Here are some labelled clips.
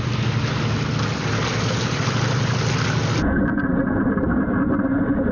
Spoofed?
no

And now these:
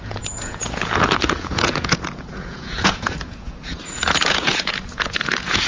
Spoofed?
yes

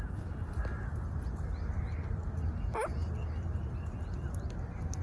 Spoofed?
no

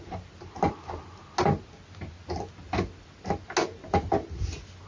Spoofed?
no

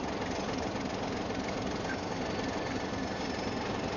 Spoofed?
no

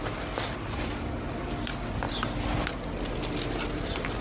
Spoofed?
yes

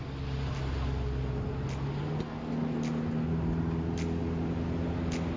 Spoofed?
no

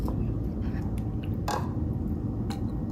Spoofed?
no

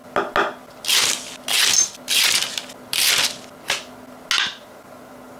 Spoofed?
no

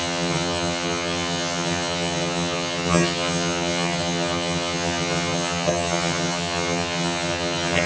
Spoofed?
yes